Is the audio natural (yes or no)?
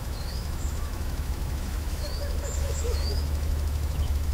no